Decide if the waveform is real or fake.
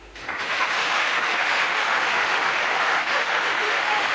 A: fake